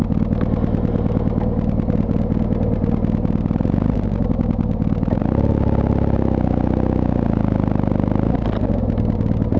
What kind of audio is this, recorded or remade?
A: recorded